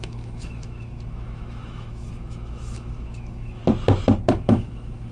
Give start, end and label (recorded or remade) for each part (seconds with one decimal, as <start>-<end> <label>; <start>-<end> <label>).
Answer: 0.0-3.6 remade; 3.6-4.3 recorded; 4.3-5.1 remade